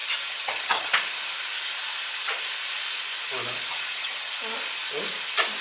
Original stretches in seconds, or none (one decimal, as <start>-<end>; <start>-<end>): 0.9-3.7; 4.3-5.6